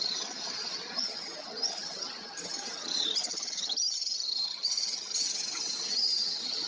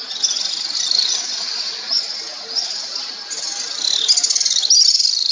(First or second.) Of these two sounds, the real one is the second